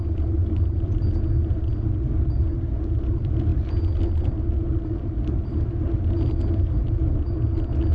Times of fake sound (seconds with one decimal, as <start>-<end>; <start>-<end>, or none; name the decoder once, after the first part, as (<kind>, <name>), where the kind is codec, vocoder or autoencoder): none